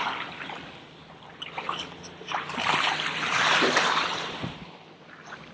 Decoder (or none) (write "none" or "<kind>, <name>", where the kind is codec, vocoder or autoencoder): none